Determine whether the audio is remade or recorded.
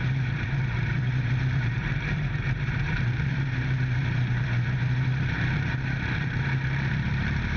remade